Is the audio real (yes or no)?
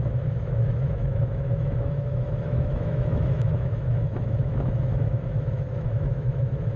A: no